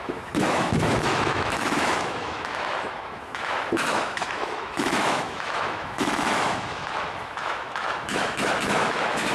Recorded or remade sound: remade